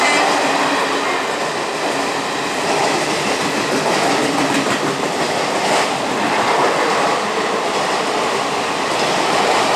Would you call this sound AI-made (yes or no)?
no